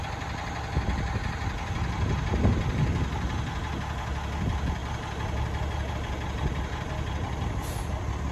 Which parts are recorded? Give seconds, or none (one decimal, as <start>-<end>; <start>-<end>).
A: 0.0-8.3